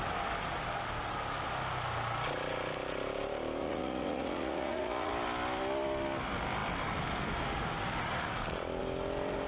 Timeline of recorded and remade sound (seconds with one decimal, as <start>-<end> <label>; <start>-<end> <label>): 0.0-3.6 recorded; 3.6-5.1 remade; 5.1-9.5 recorded